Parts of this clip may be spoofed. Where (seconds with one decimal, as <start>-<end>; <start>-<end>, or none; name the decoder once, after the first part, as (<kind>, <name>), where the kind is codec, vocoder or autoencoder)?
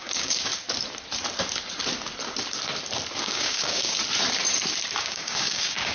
0.0-0.5 (codec, DAC); 3.2-4.0; 5.0-5.9